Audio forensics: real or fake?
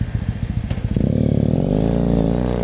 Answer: real